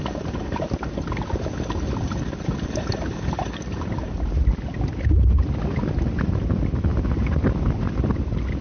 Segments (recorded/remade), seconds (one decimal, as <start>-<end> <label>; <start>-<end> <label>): 0.0-8.6 recorded